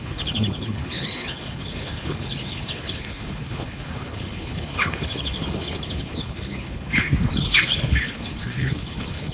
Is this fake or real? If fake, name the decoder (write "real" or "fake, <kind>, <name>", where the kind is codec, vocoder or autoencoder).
fake, codec, HILCodec